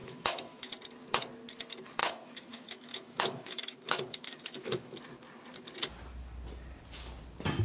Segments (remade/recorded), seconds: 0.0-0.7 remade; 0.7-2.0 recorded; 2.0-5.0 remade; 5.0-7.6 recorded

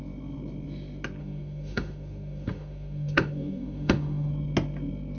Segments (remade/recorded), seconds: 0.0-1.2 recorded; 1.2-4.3 remade; 4.3-5.2 recorded

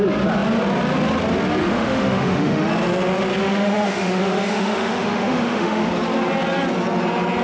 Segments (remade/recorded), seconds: 0.0-1.6 recorded; 1.6-2.7 remade; 2.7-3.4 recorded; 3.4-5.9 remade; 5.9-7.4 recorded